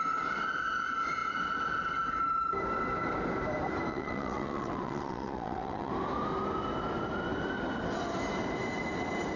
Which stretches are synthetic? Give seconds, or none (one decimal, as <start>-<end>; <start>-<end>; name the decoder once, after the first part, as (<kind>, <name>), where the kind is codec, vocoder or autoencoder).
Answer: 3.9-5.9 (vocoder, WaveNeXt)